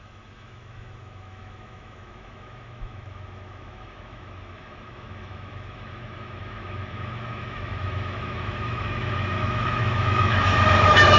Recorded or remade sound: remade